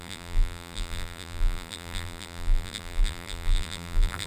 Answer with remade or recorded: remade